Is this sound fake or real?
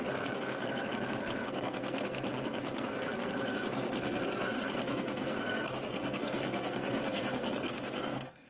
fake